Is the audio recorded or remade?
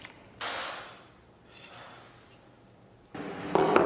recorded